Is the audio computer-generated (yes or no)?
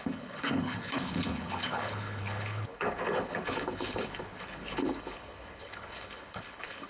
yes